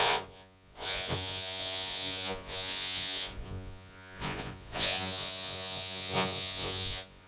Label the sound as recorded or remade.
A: remade